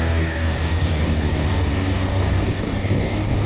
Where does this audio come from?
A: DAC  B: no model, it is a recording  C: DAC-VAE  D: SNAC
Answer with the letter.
A